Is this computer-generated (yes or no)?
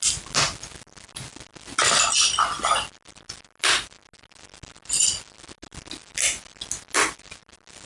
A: no